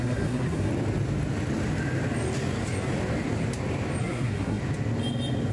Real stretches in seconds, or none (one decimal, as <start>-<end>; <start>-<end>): 0.7-4.0; 4.6-5.5